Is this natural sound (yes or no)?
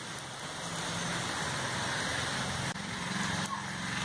yes